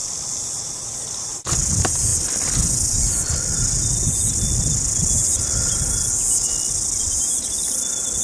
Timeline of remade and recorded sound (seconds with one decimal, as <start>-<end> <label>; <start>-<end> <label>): 0.0-8.2 recorded